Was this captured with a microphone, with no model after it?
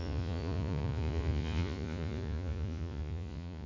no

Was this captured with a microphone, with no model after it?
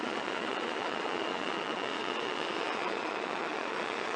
no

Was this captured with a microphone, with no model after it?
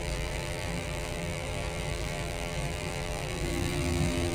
no